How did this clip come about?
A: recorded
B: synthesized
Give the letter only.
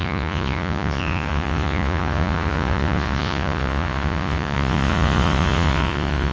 B